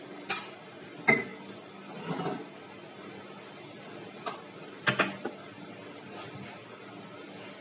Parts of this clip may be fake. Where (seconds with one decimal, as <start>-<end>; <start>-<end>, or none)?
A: none